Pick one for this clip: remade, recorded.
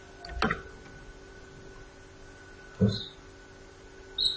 recorded